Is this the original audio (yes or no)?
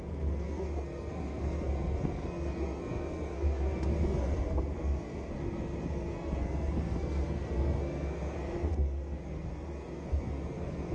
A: no